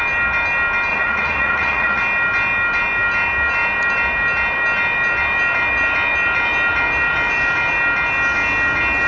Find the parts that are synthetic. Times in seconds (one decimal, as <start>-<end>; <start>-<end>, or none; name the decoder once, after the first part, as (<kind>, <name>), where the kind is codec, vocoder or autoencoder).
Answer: 0.9-2.0 (vocoder, Vocos)